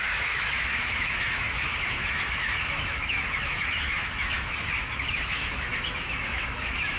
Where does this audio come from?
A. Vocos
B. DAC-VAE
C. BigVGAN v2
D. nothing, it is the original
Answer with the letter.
B